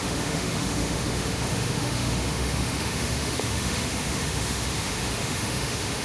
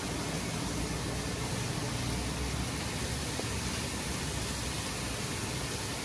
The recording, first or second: second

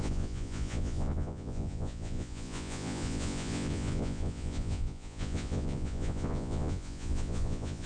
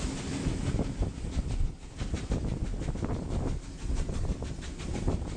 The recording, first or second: second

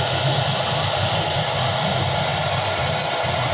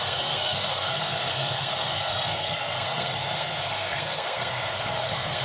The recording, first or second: first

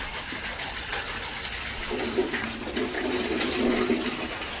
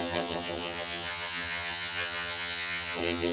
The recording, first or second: first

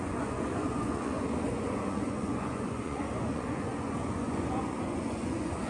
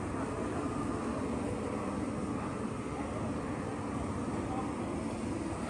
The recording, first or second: second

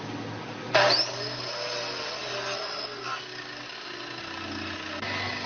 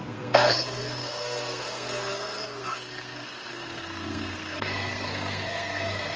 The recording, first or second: first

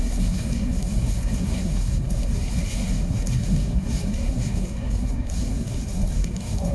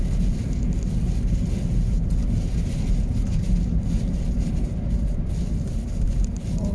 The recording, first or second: second